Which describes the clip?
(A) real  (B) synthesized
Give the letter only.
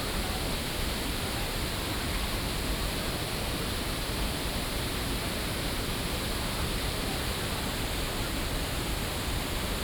B